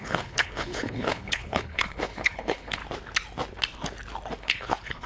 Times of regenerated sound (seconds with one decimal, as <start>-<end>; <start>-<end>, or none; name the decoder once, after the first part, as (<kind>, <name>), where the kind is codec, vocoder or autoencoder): 0.0-2.8 (codec, HILCodec); 4.4-5.1